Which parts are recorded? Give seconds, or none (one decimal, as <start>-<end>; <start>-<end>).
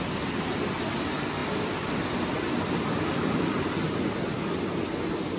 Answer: 0.0-1.4; 4.3-5.4